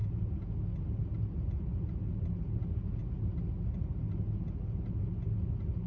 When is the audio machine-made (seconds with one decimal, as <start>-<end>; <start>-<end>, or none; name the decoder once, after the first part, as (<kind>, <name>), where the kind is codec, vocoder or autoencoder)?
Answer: 0.0-0.5 (vocoder, Vocos)